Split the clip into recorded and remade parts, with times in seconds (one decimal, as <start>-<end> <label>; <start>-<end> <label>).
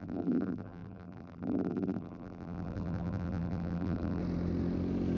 0.0-4.2 remade; 4.2-5.2 recorded